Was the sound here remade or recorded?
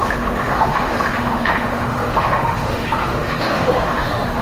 remade